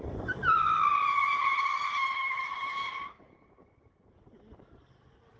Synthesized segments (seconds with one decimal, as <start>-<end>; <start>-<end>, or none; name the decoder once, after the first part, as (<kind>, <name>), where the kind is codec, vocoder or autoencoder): 2.7-3.3 (codec, DAC)